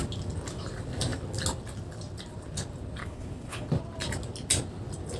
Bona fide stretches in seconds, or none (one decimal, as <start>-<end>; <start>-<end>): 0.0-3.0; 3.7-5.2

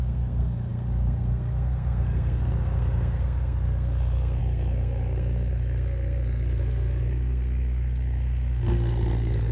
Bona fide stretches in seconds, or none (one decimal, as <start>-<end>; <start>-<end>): none

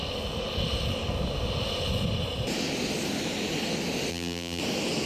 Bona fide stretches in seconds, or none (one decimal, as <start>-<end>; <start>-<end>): 0.0-4.1; 4.6-5.1

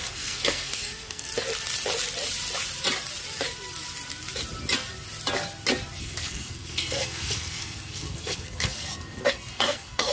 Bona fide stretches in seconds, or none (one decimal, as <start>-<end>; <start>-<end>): 1.3-6.0